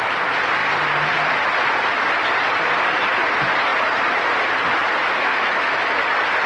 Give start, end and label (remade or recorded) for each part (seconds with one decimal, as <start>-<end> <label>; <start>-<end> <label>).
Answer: 0.0-5.0 recorded; 5.0-5.8 remade; 5.8-6.5 recorded